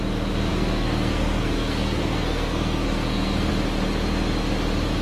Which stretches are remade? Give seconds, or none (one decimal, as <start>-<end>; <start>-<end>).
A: 0.5-3.5